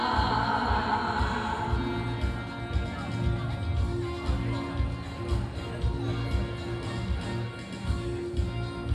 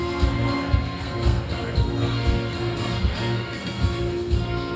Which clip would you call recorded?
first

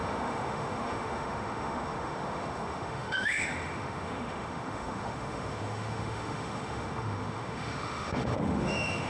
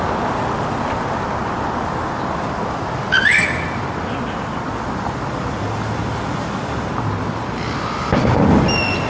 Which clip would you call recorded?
second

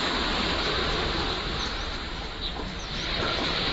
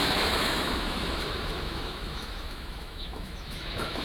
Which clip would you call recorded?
first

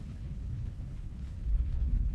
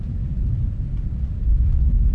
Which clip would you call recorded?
second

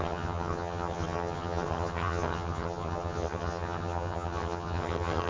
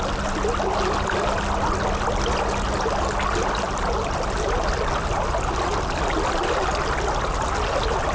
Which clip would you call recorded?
second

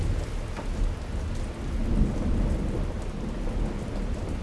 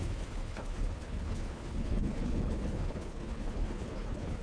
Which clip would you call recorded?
first